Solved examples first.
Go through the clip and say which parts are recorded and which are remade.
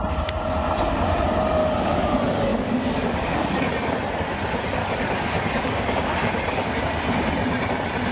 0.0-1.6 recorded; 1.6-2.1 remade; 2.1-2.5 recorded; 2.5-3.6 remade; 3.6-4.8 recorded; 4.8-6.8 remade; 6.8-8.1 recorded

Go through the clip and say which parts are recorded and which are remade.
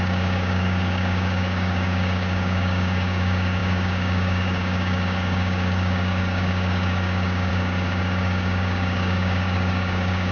0.0-10.3 remade